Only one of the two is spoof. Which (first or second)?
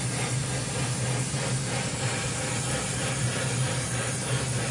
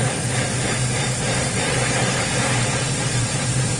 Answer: second